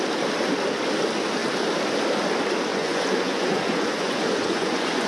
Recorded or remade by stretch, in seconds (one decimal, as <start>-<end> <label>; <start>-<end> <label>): 0.0-2.7 recorded; 2.7-5.1 remade

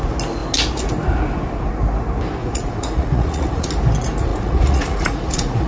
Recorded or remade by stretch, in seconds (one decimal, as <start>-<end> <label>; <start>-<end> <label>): 0.0-2.4 recorded; 2.4-3.7 remade; 3.7-4.3 recorded; 4.3-5.7 remade

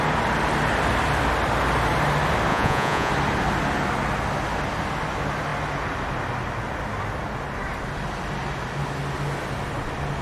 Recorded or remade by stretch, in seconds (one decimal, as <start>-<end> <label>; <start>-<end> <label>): 0.0-2.5 recorded; 2.5-3.1 remade; 3.1-10.2 recorded

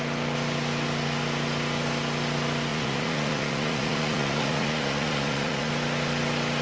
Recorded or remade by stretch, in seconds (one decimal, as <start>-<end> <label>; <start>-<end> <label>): 0.0-2.7 recorded; 2.7-5.7 remade; 5.7-6.6 recorded

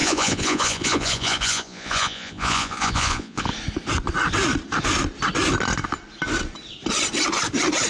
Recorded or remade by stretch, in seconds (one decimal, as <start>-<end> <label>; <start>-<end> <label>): 0.0-3.5 remade; 3.5-7.9 recorded

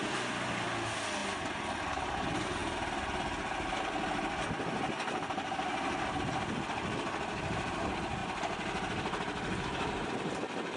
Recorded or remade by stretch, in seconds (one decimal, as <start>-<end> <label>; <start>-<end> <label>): 0.0-10.8 recorded